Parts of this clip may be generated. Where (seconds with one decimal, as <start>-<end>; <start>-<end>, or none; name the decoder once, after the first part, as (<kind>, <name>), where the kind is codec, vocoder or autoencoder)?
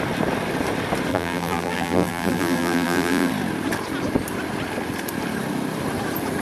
1.1-3.3 (vocoder, BigVGAN v2)